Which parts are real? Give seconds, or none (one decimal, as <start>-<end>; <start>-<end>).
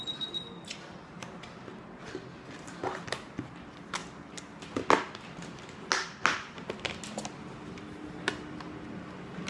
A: 0.0-9.5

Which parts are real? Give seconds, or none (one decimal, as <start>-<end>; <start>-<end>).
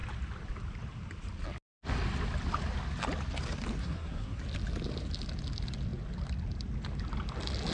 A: 0.0-3.8; 4.4-7.7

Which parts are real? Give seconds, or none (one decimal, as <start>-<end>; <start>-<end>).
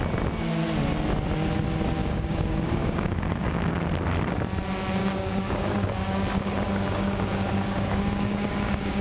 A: 0.0-2.0; 3.7-5.0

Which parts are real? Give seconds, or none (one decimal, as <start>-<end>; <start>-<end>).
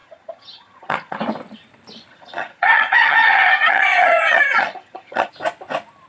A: 1.2-2.1; 5.3-6.1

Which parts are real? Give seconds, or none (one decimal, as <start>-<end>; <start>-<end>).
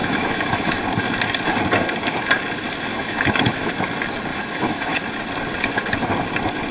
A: 0.8-2.9; 3.7-4.3; 5.0-6.7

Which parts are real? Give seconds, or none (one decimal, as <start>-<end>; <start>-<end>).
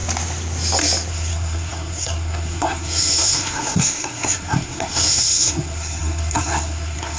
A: 0.0-1.1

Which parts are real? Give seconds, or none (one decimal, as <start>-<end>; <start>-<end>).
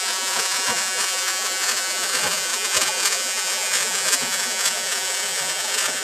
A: none